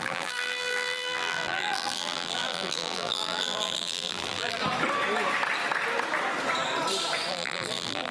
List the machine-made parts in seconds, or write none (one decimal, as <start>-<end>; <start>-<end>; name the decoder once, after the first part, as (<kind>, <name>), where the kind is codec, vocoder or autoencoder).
0.0-4.6 (vocoder, BigVGAN v2); 7.3-8.1

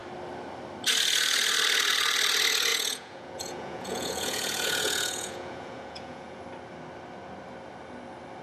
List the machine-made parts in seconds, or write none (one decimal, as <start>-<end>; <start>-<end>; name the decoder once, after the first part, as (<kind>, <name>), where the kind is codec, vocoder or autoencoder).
2.7-6.4 (vocoder, Vocos)

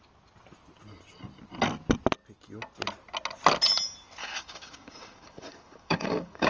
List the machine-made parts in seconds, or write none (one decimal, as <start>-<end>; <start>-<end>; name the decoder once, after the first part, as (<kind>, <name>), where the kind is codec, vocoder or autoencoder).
4.2-6.5 (codec, DAC)